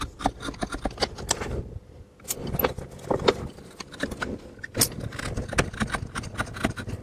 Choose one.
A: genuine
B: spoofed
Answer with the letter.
A